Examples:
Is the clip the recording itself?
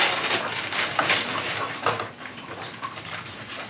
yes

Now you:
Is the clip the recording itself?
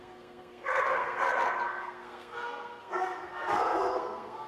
no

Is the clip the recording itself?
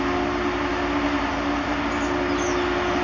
yes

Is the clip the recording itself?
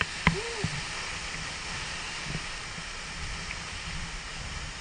yes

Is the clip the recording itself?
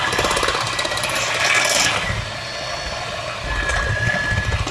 yes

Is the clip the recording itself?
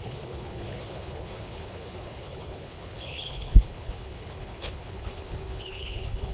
no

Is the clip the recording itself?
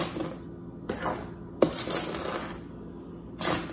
yes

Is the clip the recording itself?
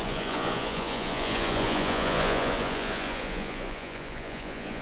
no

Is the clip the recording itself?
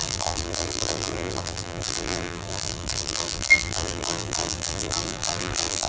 no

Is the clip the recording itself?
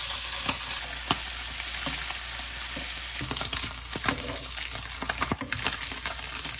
yes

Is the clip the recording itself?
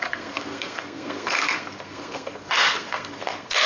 no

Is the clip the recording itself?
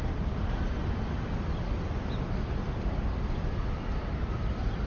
yes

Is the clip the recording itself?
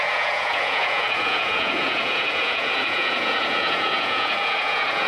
no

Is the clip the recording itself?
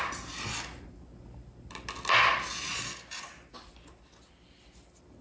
yes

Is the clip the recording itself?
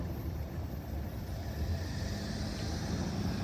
yes